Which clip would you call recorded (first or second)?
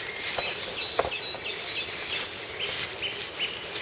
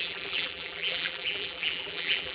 first